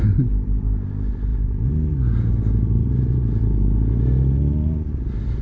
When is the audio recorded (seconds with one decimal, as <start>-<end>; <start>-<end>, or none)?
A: 0.0-1.3; 2.3-2.8; 3.4-5.4